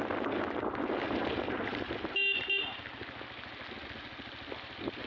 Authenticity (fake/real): real